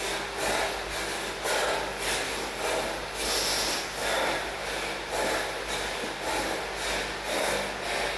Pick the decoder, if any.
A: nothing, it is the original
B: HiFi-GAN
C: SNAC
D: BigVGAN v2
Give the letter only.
A